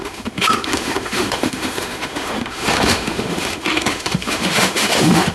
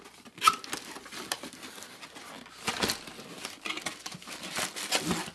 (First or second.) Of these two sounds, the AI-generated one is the first